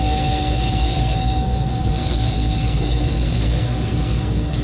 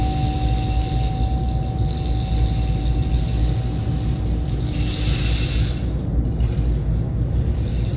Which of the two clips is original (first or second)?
second